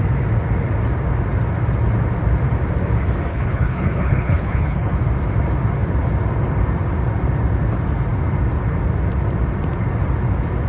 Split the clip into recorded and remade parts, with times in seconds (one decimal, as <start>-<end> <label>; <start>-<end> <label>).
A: 0.0-3.3 recorded; 3.3-4.9 remade; 4.9-10.7 recorded